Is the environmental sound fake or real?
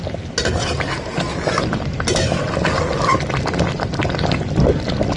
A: real